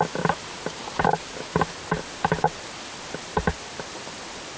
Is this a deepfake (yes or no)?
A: no